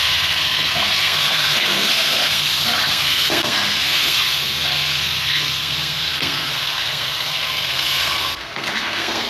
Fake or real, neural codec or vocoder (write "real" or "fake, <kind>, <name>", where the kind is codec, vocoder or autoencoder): fake, codec, SNAC